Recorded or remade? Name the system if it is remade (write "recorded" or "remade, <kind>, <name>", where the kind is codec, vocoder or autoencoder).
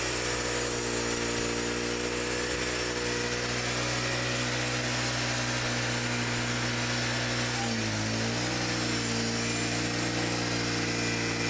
recorded